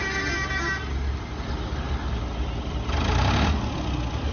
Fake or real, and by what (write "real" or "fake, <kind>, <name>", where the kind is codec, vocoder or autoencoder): real